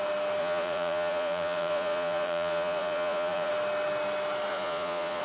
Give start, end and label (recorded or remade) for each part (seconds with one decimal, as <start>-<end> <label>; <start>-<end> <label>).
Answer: 0.0-0.4 recorded; 0.4-3.5 remade; 3.5-4.5 recorded; 4.5-5.2 remade